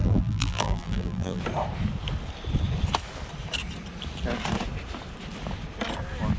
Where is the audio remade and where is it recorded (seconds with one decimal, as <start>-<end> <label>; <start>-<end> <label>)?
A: 0.0-1.4 remade; 1.4-6.4 recorded